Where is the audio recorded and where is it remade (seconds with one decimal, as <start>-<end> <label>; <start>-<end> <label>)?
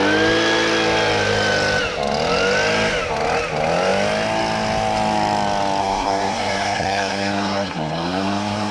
0.0-5.8 recorded; 5.8-8.7 remade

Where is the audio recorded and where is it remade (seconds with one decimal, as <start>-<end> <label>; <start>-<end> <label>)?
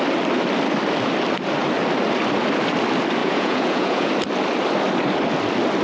0.0-3.2 recorded; 3.2-4.1 remade; 4.1-5.8 recorded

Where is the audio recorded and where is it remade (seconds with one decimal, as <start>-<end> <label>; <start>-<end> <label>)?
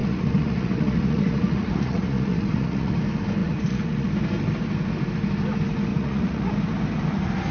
0.0-3.0 remade; 3.0-3.4 recorded; 3.4-4.1 remade; 4.1-5.9 recorded; 5.9-6.5 remade; 6.5-7.5 recorded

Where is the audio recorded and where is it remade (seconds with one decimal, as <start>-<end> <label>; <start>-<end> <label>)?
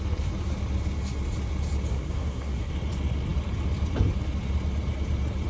0.0-1.9 recorded; 1.9-2.7 remade; 2.7-5.5 recorded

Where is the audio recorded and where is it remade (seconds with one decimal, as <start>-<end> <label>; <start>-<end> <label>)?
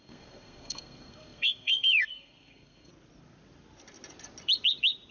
0.0-2.9 remade; 2.9-5.1 recorded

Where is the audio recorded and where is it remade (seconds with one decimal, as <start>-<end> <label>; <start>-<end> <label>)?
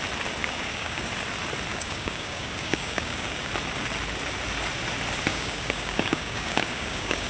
0.0-0.4 recorded; 0.4-1.1 remade; 1.1-1.7 recorded; 1.7-3.5 remade; 3.5-5.3 recorded; 5.3-7.3 remade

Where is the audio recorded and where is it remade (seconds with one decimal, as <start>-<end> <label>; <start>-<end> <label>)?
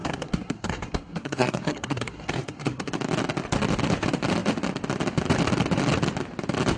0.0-2.9 remade; 2.9-6.8 recorded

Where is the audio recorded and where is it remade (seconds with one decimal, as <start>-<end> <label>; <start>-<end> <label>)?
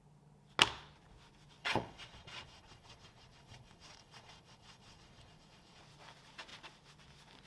0.0-1.6 recorded; 1.6-5.8 remade; 5.8-7.5 recorded